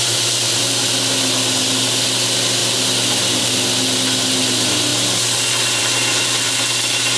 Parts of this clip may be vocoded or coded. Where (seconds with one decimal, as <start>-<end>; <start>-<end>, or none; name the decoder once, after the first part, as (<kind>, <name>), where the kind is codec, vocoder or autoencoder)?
none